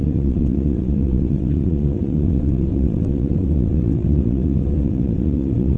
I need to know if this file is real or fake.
fake